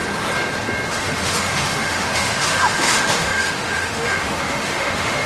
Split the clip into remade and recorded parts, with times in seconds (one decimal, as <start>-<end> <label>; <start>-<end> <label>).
0.0-1.0 recorded; 1.0-5.3 remade